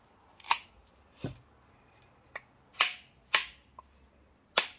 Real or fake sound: real